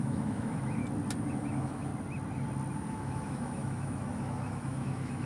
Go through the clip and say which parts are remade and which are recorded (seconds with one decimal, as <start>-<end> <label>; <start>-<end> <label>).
0.0-0.8 remade; 0.8-1.3 recorded; 1.3-1.9 remade; 1.9-2.9 recorded; 2.9-5.3 remade